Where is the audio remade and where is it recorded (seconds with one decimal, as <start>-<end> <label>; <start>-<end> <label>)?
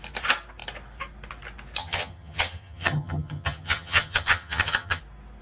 0.0-1.8 recorded; 1.8-5.0 remade; 5.0-5.4 recorded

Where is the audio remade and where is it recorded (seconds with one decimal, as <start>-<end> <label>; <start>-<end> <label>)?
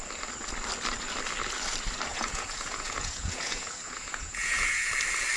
0.0-2.1 recorded; 2.1-4.9 remade; 4.9-5.4 recorded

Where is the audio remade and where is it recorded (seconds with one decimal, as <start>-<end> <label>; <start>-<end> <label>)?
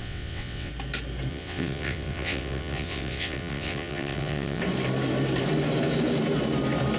0.0-0.7 remade; 0.7-1.3 recorded; 1.3-4.6 remade; 4.6-7.0 recorded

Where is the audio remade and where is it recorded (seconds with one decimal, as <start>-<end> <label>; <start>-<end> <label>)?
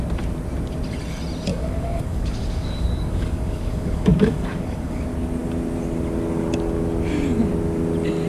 0.0-1.5 recorded; 1.5-5.0 remade; 5.0-8.3 recorded